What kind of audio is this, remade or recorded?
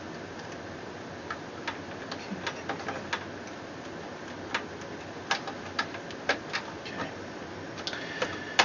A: recorded